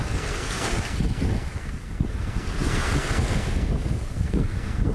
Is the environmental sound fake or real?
fake